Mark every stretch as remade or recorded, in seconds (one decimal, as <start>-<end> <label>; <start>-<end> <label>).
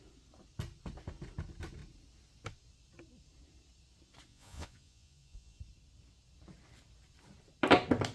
0.0-4.3 recorded; 4.3-5.6 remade; 5.6-8.1 recorded